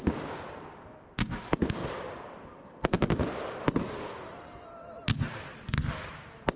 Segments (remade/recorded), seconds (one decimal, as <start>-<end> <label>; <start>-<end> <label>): 0.0-6.6 recorded